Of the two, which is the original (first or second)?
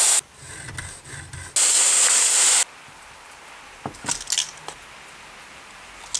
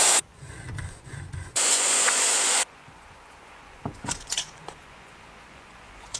first